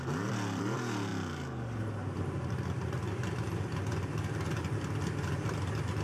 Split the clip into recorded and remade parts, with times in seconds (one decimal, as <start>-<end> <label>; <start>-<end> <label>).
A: 0.0-6.0 recorded